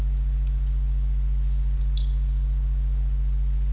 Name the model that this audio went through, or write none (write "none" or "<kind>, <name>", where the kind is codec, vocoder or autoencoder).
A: none